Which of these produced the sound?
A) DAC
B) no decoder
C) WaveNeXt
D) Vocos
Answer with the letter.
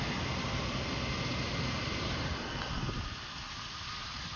B